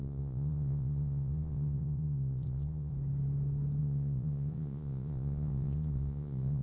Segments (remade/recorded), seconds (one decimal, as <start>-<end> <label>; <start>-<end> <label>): 0.0-2.9 remade; 2.9-3.8 recorded; 3.8-6.6 remade

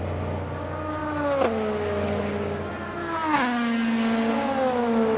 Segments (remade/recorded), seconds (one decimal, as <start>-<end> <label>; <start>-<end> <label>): 0.0-5.2 recorded

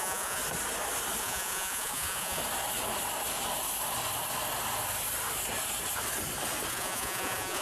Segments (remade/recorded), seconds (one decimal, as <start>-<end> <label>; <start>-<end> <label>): 0.0-0.4 remade; 0.4-1.2 recorded; 1.2-2.4 remade; 2.4-6.7 recorded; 6.7-7.6 remade

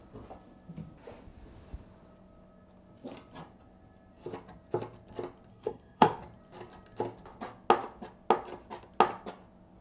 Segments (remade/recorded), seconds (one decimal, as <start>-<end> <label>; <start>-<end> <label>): 0.0-5.5 recorded; 5.5-6.2 remade; 6.2-9.8 recorded

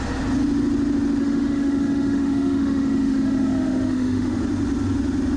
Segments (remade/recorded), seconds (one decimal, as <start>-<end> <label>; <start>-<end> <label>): 0.0-1.2 recorded; 1.2-4.4 remade; 4.4-5.4 recorded

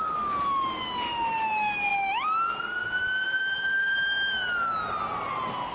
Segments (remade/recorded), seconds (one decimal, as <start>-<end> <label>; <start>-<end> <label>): 0.0-5.7 recorded

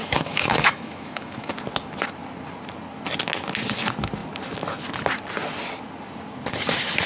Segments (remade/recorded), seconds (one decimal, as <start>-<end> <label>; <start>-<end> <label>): 0.0-1.5 remade; 1.5-7.1 recorded

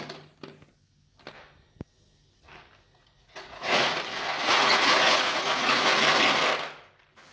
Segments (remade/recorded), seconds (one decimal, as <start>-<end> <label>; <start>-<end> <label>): 0.0-2.9 recorded; 2.9-4.0 remade; 4.0-4.4 recorded; 4.4-5.8 remade; 5.8-7.3 recorded